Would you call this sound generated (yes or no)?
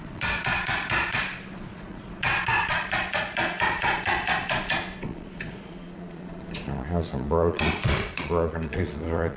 yes